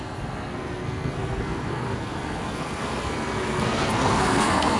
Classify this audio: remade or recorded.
remade